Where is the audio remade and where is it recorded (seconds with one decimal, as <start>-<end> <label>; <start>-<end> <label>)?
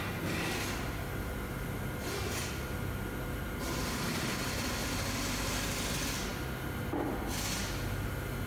0.0-8.5 recorded